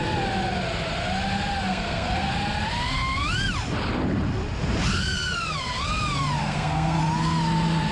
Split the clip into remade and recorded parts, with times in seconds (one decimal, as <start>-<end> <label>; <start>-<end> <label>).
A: 0.0-1.7 recorded; 1.7-2.3 remade; 2.3-6.4 recorded; 6.4-7.0 remade; 7.0-7.9 recorded